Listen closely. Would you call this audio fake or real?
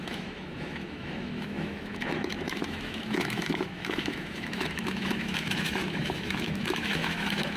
fake